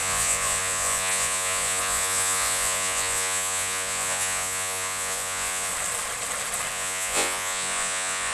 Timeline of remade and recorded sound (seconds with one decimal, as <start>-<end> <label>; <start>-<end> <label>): 0.0-5.7 remade; 5.7-6.7 recorded; 6.7-8.3 remade